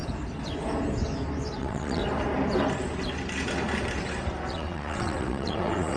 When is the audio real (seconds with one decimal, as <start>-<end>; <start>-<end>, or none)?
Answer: 0.0-1.6; 2.0-4.5